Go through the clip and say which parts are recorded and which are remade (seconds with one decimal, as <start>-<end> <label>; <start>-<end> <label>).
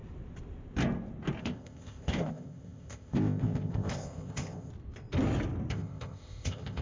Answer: 0.0-1.4 recorded; 1.4-4.7 remade; 4.7-5.7 recorded; 5.7-6.8 remade